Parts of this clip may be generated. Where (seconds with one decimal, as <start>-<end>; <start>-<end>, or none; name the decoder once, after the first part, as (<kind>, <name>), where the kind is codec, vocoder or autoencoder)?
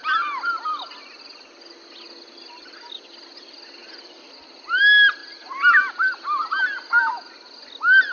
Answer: 0.0-1.0 (vocoder, BigVGAN v2); 3.8-4.8; 5.2-6.4